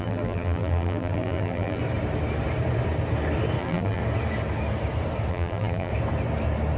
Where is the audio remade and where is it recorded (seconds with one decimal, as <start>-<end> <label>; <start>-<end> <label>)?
0.0-1.8 remade; 1.8-3.6 recorded; 3.6-4.0 remade; 4.0-5.3 recorded; 5.3-5.9 remade; 5.9-6.8 recorded